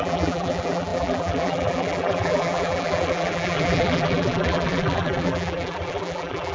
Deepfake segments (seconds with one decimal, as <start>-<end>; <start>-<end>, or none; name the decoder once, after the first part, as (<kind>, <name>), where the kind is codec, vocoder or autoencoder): 0.0-6.5 (vocoder, BigVGAN v2)